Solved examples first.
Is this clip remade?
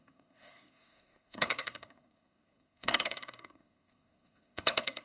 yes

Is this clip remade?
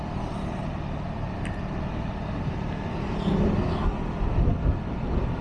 no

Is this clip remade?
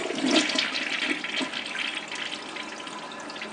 no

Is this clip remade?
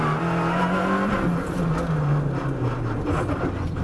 no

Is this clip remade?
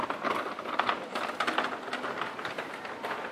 no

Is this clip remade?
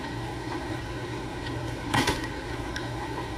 yes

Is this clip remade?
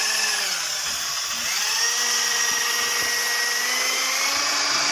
no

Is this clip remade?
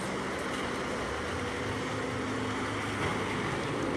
no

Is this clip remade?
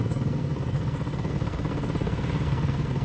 yes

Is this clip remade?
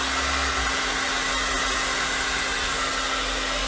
no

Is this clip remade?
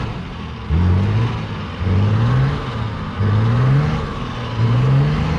no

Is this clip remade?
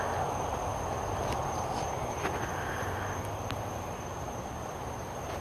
no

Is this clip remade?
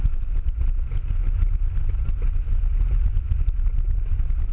no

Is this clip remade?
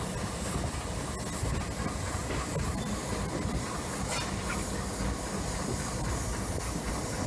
no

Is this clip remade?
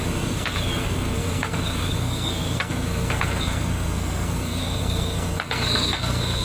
yes